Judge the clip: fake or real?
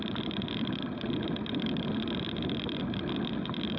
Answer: real